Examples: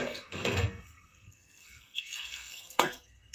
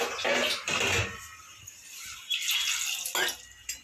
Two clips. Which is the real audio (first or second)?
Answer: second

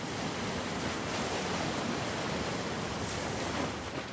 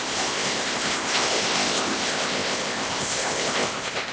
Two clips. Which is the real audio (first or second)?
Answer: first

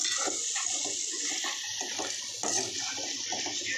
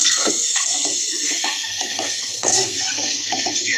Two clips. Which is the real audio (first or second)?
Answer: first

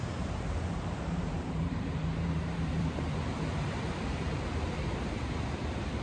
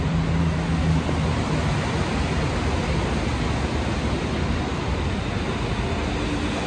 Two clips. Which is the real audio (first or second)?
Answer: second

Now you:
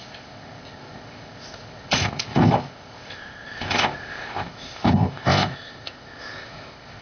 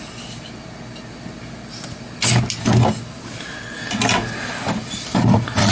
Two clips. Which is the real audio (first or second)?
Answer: second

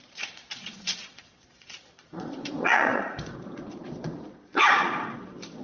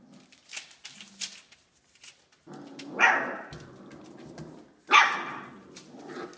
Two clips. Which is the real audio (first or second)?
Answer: second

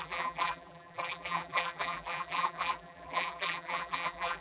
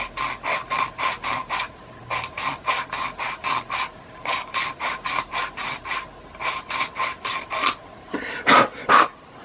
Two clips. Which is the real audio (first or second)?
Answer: second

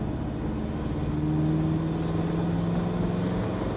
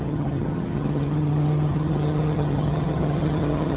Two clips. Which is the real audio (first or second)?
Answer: first